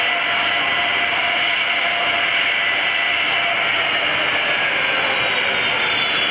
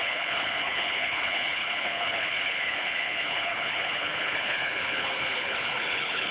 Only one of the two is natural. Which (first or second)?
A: first